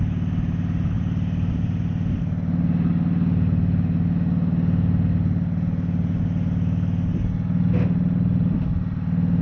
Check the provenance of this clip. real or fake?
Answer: real